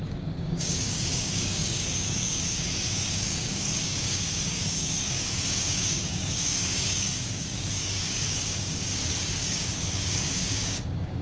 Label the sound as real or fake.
fake